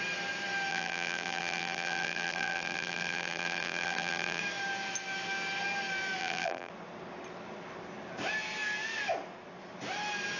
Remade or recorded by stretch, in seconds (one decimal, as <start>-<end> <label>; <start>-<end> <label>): 0.0-0.7 recorded; 0.7-4.4 remade; 4.4-6.2 recorded; 6.2-6.7 remade; 6.7-10.4 recorded